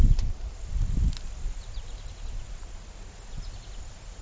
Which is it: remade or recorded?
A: recorded